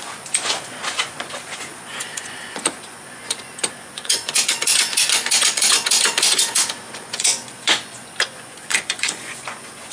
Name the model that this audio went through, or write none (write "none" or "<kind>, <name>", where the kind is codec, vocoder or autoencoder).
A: vocoder, Vocos